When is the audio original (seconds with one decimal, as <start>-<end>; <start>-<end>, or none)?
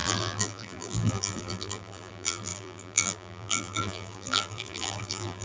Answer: none